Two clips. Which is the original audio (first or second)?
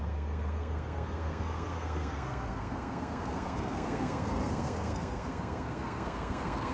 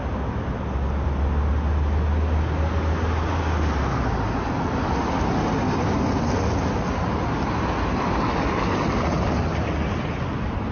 second